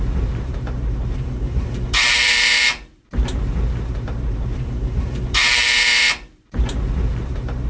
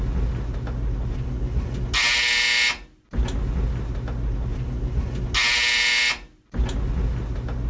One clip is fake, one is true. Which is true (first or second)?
second